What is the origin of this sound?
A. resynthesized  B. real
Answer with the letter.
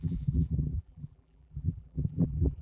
A